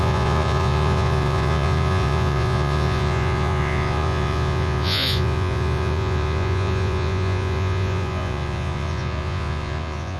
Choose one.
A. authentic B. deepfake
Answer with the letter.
B